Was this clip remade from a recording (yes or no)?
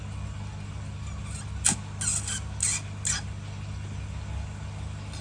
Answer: no